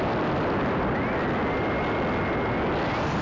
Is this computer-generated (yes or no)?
no